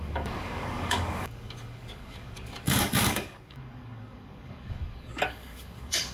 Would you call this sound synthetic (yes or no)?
yes